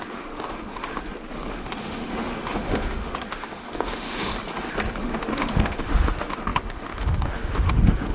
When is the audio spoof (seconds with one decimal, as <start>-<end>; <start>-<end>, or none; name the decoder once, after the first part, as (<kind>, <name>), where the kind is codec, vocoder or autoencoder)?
0.0-0.9 (autoencoder, DAC-VAE); 1.5-4.3; 5.0-8.1